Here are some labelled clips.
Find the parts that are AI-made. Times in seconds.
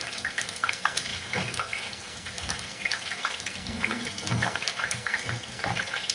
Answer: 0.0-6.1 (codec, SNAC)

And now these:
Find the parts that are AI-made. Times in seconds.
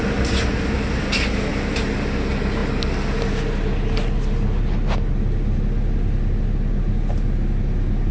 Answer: none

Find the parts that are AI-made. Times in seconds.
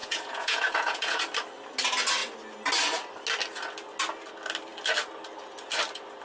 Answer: 0.0-1.2 (vocoder, Vocos)